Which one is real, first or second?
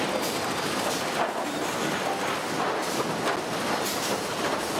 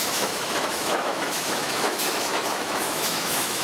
first